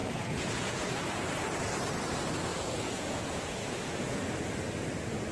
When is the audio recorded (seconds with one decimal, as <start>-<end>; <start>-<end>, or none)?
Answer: 0.9-2.5; 4.2-5.3